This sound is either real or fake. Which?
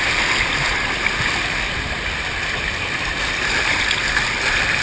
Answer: real